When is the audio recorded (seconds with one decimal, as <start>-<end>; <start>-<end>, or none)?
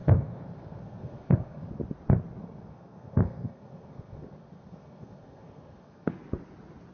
1.7-2.4; 6.1-6.9